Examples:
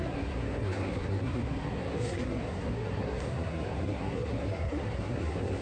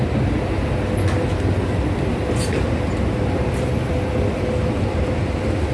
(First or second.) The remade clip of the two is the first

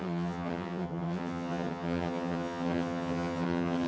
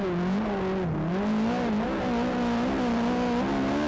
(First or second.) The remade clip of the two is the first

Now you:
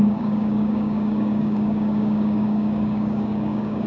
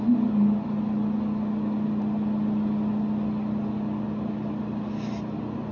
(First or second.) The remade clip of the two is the first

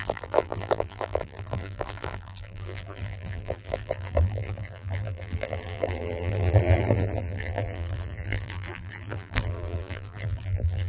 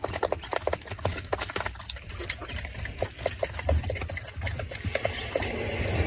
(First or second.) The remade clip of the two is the first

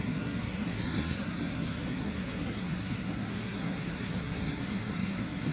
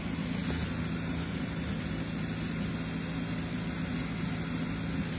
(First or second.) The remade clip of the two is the first